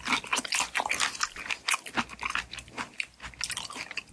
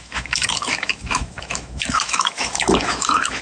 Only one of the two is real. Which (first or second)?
first